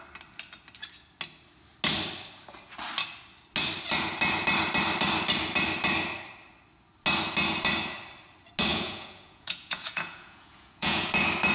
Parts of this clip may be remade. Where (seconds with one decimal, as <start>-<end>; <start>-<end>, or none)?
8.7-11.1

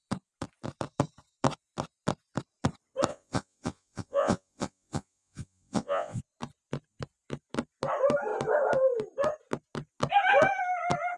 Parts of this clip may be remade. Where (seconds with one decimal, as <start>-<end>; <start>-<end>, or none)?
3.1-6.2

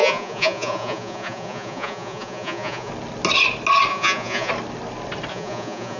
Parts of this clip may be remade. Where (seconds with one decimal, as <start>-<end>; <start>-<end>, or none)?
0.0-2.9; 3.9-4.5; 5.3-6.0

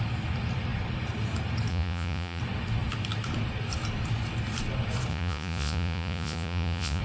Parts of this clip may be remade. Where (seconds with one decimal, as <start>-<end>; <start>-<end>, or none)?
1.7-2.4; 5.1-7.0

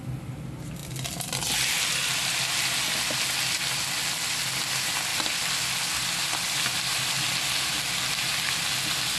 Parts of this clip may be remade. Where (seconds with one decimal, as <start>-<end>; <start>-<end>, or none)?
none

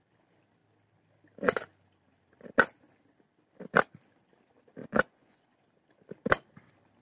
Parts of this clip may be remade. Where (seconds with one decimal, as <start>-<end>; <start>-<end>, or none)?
4.8-5.6

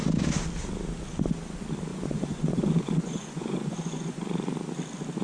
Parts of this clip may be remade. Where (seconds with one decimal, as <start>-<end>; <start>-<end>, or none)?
1.9-4.1

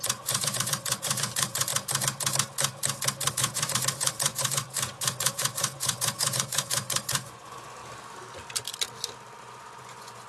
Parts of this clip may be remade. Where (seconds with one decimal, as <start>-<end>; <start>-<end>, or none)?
0.0-1.7; 3.3-7.8; 9.4-10.3